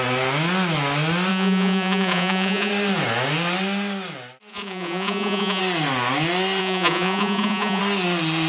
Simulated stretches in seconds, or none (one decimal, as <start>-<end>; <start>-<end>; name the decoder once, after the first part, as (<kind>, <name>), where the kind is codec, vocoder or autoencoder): 1.3-2.7 (vocoder, Vocos); 4.5-5.6; 6.6-7.8